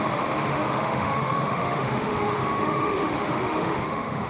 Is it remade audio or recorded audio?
remade